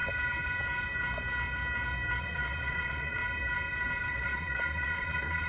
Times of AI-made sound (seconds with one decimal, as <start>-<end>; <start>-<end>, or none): 2.2-3.2; 4.1-5.5